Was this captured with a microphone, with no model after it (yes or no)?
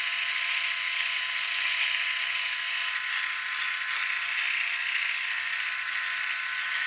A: yes